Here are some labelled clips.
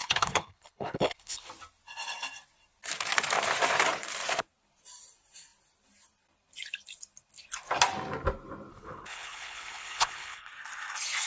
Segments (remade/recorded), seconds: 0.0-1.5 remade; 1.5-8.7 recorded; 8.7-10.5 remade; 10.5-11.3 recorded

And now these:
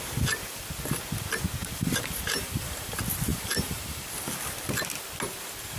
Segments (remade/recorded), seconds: 0.0-1.6 recorded; 1.6-2.9 remade; 2.9-3.3 recorded; 3.3-4.1 remade; 4.1-5.8 recorded

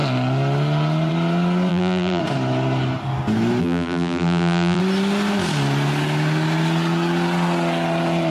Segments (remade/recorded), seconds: 0.0-1.7 recorded; 1.7-2.2 remade; 2.2-3.6 recorded; 3.6-4.8 remade; 4.8-8.3 recorded

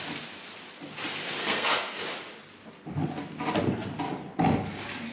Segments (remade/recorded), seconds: 0.0-1.4 recorded; 1.4-2.0 remade; 2.0-5.1 recorded

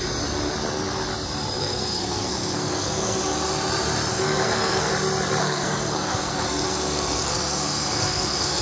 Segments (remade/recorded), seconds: 0.0-1.6 recorded; 1.6-3.2 remade; 3.2-4.1 recorded; 4.1-4.9 remade; 4.9-5.4 recorded; 5.4-8.6 remade

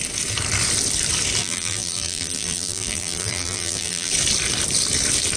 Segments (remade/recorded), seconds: 0.0-1.4 recorded; 1.4-4.1 remade; 4.1-5.4 recorded

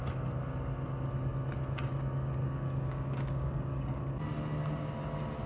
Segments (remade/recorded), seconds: 0.0-2.4 recorded; 2.4-4.0 remade; 4.0-5.5 recorded

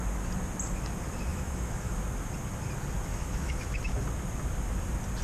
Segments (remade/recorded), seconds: 0.0-1.3 recorded; 1.3-2.0 remade; 2.0-3.1 recorded; 3.1-3.8 remade; 3.8-5.2 recorded